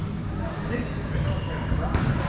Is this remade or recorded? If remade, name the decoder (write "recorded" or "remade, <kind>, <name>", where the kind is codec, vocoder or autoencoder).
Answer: recorded